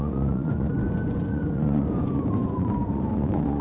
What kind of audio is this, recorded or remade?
remade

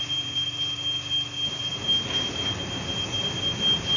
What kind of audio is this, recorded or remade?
recorded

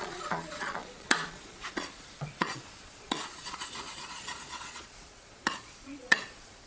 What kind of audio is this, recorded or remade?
remade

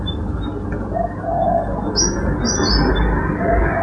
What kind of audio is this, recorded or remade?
recorded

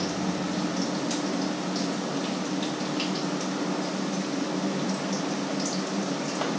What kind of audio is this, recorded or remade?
recorded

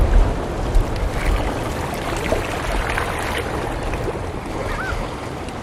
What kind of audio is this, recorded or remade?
recorded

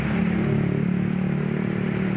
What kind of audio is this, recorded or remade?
recorded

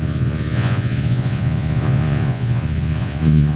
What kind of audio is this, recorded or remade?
remade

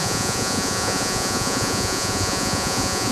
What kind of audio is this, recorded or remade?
remade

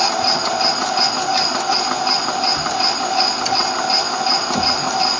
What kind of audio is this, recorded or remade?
recorded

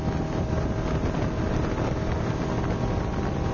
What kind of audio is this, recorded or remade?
recorded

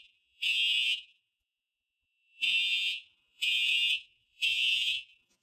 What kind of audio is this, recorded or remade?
remade